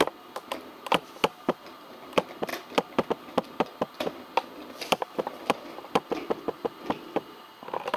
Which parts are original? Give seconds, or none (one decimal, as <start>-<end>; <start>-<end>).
0.0-8.0